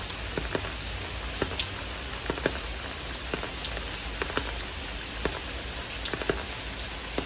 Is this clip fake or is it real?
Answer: real